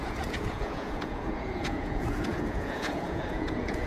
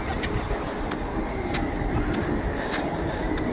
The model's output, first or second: first